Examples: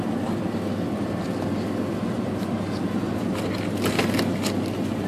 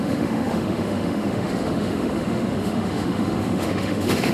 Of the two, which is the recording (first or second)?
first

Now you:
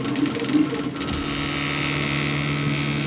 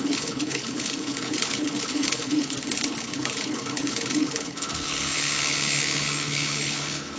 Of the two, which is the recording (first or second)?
first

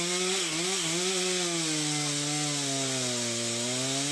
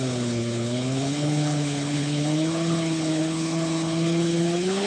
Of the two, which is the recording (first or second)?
first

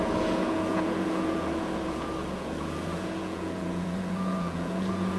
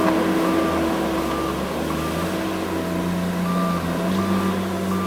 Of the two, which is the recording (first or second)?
second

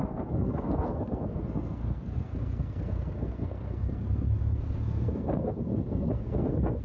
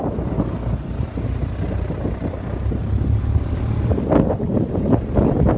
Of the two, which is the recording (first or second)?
second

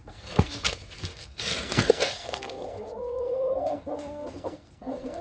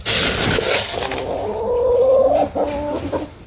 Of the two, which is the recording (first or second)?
second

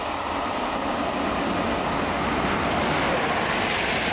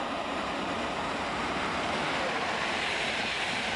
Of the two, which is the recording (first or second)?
first